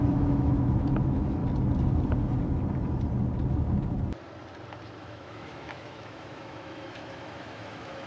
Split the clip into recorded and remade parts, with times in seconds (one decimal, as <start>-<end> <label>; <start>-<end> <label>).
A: 0.0-1.4 remade; 1.4-5.0 recorded; 5.0-8.1 remade